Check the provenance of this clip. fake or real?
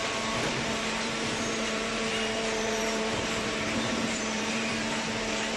fake